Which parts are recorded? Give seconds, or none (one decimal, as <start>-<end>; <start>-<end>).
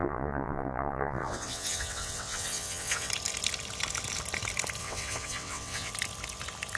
3.1-4.8; 5.9-6.8